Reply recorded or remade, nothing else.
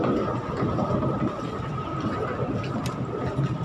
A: recorded